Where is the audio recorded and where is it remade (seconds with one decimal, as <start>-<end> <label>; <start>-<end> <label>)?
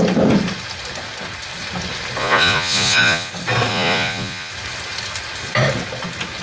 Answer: 0.0-2.2 recorded; 2.2-3.3 remade; 3.3-3.7 recorded; 3.7-4.5 remade; 4.5-6.4 recorded